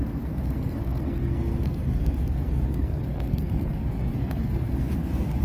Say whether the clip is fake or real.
fake